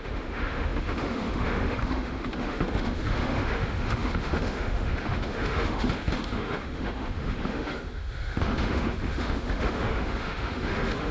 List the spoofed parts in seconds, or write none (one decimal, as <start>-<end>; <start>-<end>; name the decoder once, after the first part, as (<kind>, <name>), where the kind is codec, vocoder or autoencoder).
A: 0.0-11.1 (autoencoder, DAC-VAE)